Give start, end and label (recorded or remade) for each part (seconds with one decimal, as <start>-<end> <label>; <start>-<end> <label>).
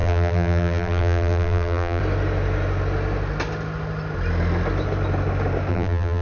0.0-2.0 remade; 2.0-5.7 recorded; 5.7-6.2 remade